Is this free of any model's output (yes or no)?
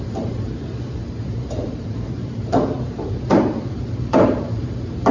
no